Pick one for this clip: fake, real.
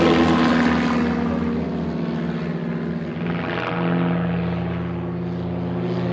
real